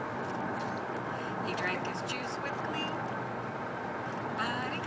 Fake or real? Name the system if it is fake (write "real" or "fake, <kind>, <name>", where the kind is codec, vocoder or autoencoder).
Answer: real